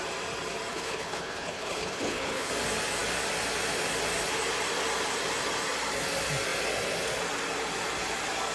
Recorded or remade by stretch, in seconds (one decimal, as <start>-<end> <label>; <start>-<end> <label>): 0.0-0.7 recorded; 0.7-2.5 remade; 2.5-8.5 recorded